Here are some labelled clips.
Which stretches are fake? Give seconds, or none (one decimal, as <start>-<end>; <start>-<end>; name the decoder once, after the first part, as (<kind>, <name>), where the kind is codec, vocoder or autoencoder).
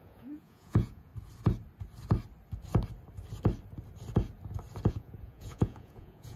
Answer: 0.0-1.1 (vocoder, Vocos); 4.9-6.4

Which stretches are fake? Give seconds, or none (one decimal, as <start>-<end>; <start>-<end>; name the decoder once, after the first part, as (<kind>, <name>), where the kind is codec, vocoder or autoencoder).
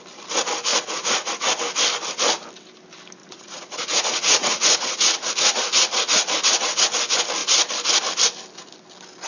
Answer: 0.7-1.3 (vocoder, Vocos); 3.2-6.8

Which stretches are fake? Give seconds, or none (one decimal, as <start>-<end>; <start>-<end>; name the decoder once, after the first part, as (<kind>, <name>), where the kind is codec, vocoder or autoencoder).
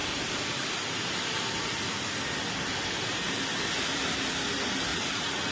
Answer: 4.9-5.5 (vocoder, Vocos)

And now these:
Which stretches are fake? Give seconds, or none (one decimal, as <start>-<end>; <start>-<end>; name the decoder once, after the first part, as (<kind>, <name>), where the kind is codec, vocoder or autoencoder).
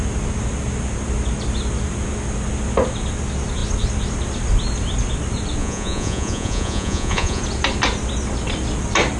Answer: 5.6-7.4 (vocoder, Vocos)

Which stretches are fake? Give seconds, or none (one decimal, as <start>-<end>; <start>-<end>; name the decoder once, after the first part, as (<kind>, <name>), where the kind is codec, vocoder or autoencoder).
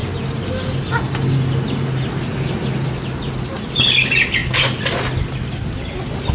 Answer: none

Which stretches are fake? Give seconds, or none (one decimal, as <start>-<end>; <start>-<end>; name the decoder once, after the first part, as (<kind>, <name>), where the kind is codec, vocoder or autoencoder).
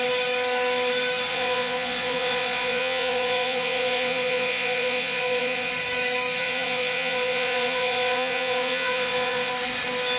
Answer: 1.3-5.7 (vocoder, Vocos); 6.4-9.5